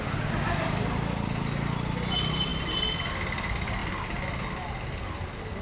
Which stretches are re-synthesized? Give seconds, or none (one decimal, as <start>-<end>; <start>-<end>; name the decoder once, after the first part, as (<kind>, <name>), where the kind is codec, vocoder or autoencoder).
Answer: none